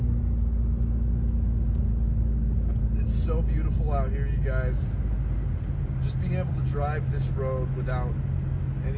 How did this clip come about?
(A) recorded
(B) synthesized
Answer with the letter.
A